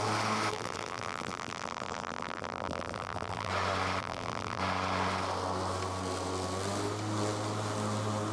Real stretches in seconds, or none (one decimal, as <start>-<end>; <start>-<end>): 0.0-0.5; 3.5-4.0; 4.6-8.3